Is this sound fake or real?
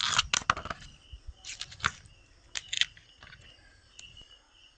real